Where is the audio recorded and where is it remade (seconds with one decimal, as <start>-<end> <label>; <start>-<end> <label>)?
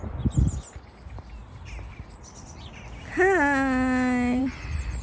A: 0.0-5.0 recorded